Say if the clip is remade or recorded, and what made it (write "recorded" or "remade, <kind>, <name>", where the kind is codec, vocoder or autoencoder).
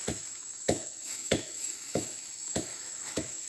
remade, autoencoder, DAC-VAE